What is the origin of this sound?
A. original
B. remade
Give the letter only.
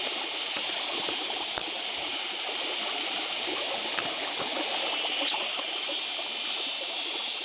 A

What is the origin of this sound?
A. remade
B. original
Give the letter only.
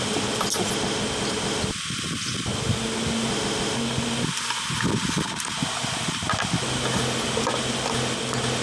B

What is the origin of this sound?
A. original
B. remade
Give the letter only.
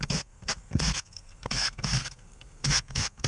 B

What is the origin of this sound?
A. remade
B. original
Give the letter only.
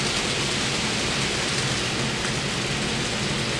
B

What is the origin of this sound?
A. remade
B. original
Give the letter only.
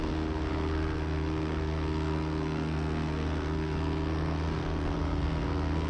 A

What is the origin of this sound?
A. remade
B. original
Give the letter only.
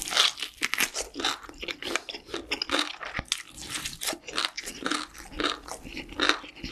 B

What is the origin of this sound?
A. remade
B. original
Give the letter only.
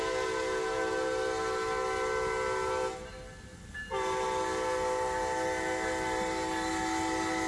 B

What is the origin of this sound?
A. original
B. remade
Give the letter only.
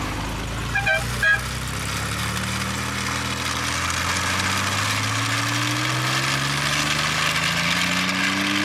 A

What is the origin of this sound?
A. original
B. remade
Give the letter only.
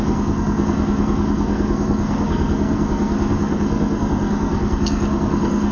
B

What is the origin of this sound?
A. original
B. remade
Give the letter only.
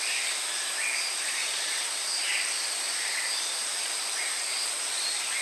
A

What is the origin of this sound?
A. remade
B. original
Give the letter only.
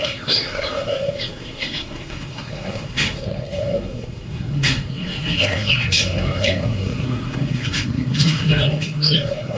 A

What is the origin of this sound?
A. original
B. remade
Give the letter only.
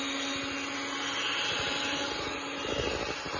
A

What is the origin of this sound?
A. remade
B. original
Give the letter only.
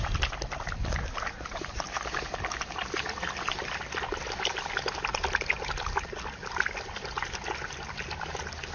B